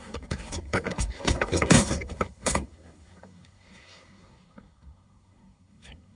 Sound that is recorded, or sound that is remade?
remade